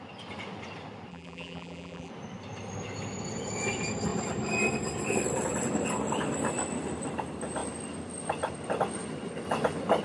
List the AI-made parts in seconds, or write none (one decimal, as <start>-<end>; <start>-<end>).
1.1-2.1